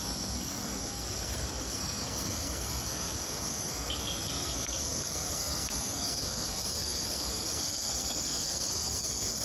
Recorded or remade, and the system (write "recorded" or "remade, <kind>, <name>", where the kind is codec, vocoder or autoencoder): remade, codec, SNAC